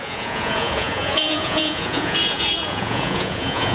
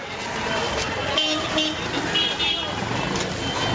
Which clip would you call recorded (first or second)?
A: second